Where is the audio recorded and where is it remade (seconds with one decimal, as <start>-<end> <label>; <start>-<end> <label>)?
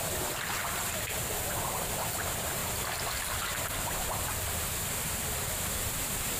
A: 0.0-2.6 remade; 2.6-4.0 recorded; 4.0-6.4 remade